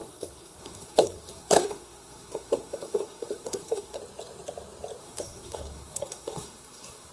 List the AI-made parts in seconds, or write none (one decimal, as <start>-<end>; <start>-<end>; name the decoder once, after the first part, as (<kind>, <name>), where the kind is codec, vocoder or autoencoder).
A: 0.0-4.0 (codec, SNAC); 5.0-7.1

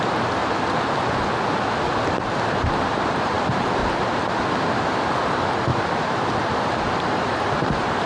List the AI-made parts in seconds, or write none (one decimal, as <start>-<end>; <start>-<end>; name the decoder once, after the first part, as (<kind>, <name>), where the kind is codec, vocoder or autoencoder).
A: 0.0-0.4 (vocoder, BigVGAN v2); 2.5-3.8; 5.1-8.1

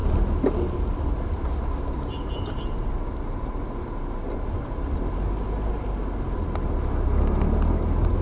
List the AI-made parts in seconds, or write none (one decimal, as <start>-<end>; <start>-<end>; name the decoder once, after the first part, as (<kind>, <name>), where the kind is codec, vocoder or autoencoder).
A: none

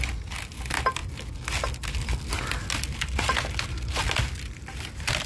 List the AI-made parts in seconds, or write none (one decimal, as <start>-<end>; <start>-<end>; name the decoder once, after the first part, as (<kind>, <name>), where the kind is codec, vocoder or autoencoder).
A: none